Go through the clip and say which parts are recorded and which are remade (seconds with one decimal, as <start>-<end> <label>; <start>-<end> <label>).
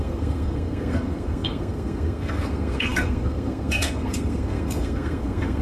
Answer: 0.0-5.6 remade